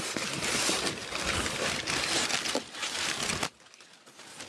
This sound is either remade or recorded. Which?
recorded